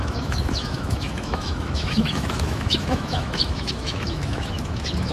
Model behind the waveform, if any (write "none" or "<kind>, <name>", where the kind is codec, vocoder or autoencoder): autoencoder, DAC-VAE